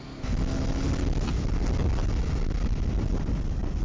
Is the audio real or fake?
real